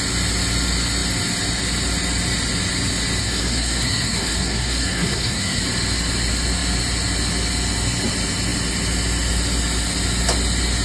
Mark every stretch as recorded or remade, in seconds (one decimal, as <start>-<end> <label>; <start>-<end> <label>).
0.0-3.2 recorded; 3.2-5.6 remade; 5.6-10.8 recorded